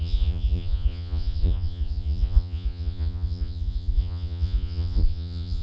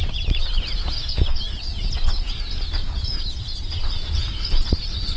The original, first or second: second